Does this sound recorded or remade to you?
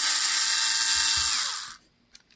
recorded